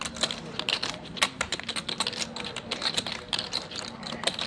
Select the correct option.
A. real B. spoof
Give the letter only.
A